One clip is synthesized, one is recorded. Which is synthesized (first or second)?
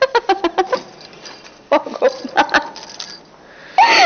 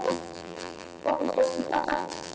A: second